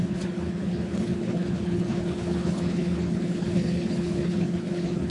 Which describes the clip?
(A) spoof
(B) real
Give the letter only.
A